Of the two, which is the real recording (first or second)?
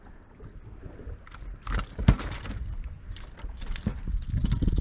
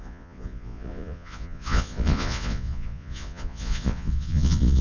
first